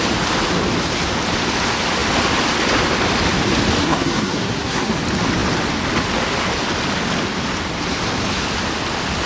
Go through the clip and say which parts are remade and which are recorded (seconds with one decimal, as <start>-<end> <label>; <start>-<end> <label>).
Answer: 0.0-3.8 recorded; 3.8-5.0 remade; 5.0-9.3 recorded

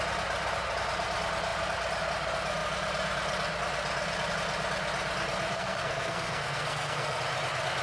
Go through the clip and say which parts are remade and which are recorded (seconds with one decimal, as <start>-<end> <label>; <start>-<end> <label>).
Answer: 0.0-5.5 recorded; 5.5-7.2 remade; 7.2-7.8 recorded